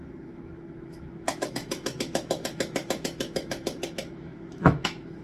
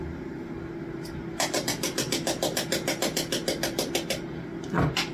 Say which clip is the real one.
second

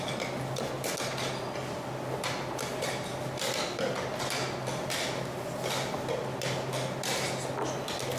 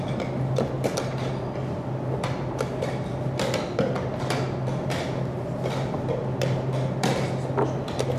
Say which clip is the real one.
first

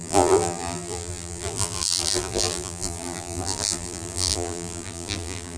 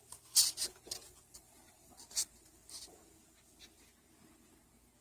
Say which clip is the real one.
second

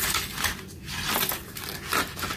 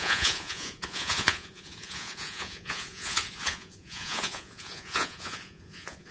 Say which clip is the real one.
first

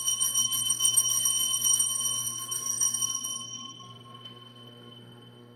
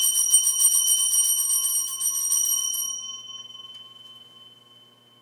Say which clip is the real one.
second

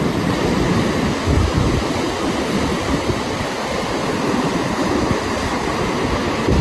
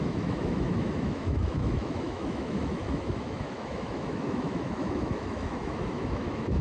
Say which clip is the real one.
first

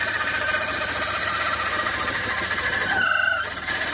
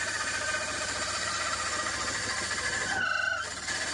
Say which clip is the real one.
second